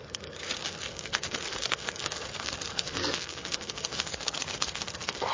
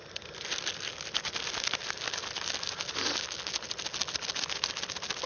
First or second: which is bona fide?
second